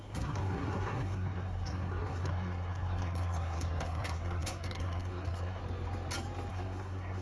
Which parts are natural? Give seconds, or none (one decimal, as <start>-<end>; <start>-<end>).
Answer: 5.6-6.5